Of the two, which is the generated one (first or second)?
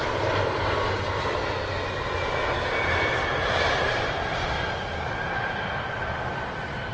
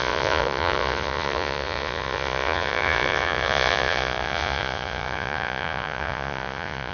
second